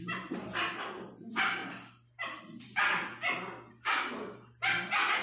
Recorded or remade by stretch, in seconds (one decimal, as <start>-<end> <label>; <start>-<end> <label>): 0.0-1.6 remade; 1.6-2.4 recorded; 2.4-3.1 remade; 3.1-5.2 recorded